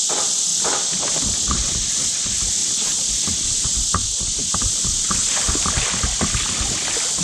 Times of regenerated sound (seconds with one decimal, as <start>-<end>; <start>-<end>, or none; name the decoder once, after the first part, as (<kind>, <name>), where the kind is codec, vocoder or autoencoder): 0.5-2.0 (vocoder, BigVGAN v2); 2.6-4.0

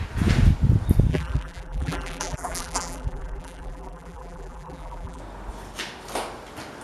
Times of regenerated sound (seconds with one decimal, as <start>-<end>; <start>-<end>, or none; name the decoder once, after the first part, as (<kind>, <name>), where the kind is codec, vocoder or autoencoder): 1.1-5.2 (vocoder, BigVGAN v2)

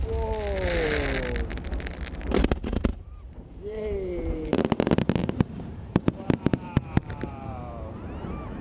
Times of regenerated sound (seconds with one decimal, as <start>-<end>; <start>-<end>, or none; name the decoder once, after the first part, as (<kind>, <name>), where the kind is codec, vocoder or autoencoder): 2.9-4.6 (vocoder, BigVGAN v2); 5.2-7.9

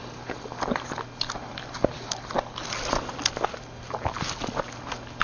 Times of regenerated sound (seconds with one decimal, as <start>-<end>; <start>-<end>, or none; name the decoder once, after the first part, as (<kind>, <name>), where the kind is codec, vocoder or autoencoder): none

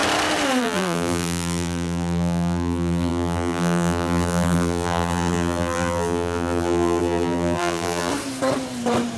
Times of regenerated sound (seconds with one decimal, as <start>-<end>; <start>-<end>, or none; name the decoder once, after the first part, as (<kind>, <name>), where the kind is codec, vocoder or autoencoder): 0.6-8.1 (vocoder, BigVGAN v2)

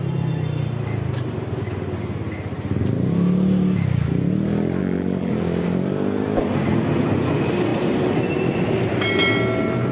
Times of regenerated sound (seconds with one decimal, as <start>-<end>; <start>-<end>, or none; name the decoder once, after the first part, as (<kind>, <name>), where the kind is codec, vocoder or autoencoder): 4.8-5.3 (vocoder, BigVGAN v2)

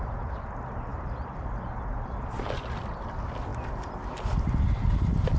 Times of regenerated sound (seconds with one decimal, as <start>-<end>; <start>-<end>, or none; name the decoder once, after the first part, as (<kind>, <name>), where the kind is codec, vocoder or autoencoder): 0.9-1.5 (vocoder, BigVGAN v2)

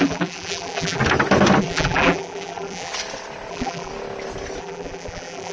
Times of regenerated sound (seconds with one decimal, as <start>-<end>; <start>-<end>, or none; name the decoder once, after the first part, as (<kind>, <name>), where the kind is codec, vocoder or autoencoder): 0.0-1.0 (vocoder, BigVGAN v2); 1.6-2.9; 3.5-3.9; 4.6-5.5